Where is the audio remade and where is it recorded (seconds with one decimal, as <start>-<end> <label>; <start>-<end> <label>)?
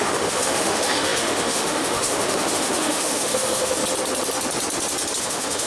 0.0-3.8 remade; 3.8-5.2 recorded; 5.2-5.7 remade